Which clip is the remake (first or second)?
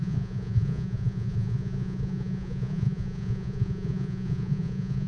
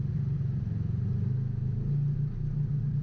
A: first